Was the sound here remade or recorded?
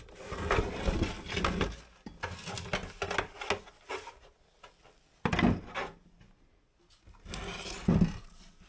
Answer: recorded